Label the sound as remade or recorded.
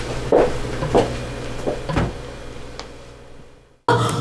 recorded